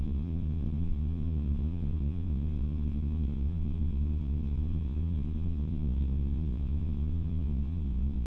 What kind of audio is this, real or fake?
fake